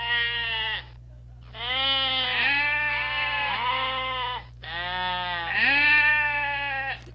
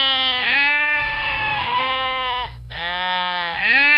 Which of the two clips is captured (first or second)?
first